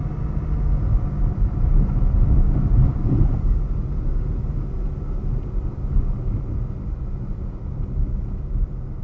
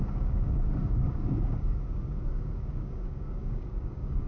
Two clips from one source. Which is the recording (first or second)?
first